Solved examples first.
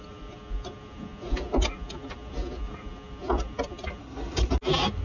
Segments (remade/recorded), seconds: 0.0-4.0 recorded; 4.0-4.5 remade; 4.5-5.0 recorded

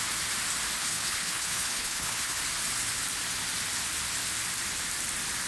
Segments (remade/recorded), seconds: 0.0-0.8 recorded; 0.8-2.4 remade; 2.4-5.5 recorded

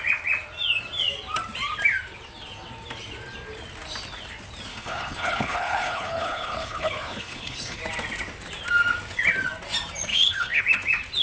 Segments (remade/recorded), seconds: 0.0-4.7 recorded; 4.7-7.8 remade; 7.8-10.1 recorded; 10.1-10.6 remade; 10.6-11.2 recorded